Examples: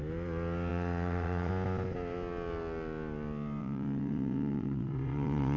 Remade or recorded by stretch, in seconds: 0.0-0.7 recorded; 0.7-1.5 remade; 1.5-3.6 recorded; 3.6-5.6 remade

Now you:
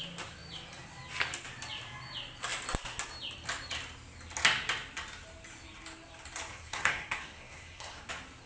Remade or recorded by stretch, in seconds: 0.0-6.5 recorded; 6.5-8.1 remade; 8.1-8.5 recorded